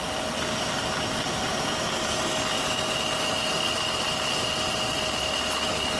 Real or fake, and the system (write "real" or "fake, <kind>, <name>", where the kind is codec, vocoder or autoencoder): real